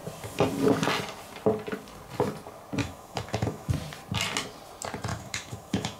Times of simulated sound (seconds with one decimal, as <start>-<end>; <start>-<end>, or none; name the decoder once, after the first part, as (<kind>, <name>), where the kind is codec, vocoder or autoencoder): 2.8-3.7 (autoencoder, DAC-VAE); 5.1-6.0